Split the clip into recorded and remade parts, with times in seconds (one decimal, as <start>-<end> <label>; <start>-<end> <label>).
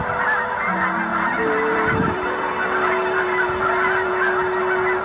0.0-1.1 recorded; 1.1-4.1 remade; 4.1-5.0 recorded